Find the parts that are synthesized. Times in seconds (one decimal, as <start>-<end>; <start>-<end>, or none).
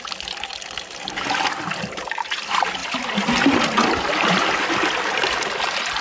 none